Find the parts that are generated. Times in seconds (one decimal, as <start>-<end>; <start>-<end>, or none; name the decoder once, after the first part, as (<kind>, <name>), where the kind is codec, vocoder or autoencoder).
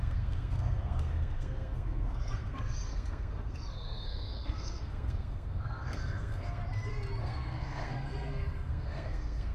0.0-6.6 (codec, SNAC); 7.2-9.5